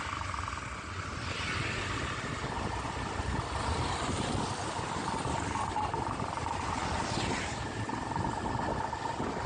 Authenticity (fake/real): real